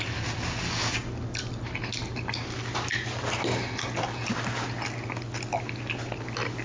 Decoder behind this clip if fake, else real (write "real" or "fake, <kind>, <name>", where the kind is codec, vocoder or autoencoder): real